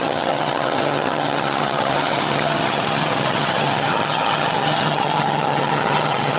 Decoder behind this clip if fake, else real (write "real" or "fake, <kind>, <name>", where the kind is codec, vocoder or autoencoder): fake, vocoder, HiFi-GAN